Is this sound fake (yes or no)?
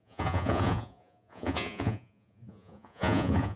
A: yes